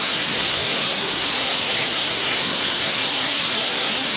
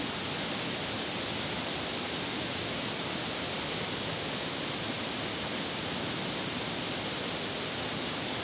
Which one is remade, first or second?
first